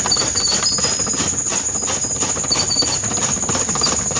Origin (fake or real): real